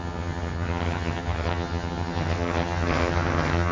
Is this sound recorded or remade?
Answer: remade